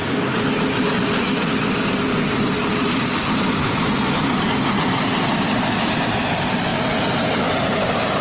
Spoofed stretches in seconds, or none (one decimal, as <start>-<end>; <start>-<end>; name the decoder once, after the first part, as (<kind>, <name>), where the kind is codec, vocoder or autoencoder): none